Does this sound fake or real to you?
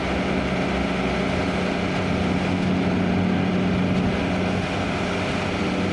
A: real